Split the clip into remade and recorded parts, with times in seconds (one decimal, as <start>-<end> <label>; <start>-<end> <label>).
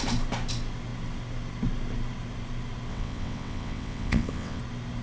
0.0-2.9 recorded; 2.9-4.6 remade; 4.6-5.0 recorded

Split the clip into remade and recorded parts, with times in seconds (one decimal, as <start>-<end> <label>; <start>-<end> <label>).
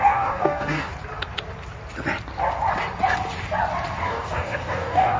0.0-0.9 remade; 0.9-4.0 recorded; 4.0-5.2 remade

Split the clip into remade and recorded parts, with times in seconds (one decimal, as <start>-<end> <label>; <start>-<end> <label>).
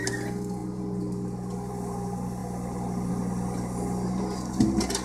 0.0-5.0 recorded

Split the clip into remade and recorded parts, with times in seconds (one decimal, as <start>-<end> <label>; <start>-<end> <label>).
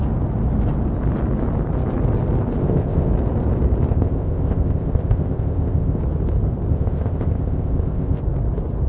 0.0-2.6 recorded; 2.6-3.1 remade; 3.1-3.9 recorded; 3.9-6.0 remade; 6.0-6.7 recorded; 6.7-8.2 remade; 8.2-8.9 recorded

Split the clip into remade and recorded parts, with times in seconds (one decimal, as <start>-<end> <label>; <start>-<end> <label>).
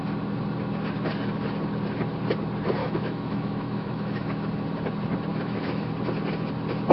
0.0-2.8 recorded; 2.8-4.5 remade; 4.5-5.3 recorded; 5.3-5.9 remade; 5.9-6.9 recorded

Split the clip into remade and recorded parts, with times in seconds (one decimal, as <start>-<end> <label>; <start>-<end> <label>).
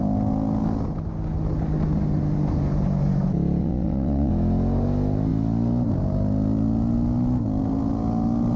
0.0-3.6 recorded; 3.6-4.3 remade; 4.3-8.6 recorded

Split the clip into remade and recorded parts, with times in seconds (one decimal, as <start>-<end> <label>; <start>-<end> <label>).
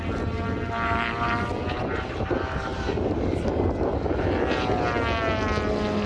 0.0-6.1 recorded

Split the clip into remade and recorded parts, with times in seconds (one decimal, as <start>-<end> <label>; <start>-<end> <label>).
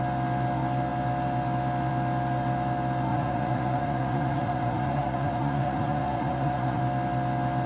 0.0-3.1 recorded; 3.1-6.8 remade; 6.8-7.7 recorded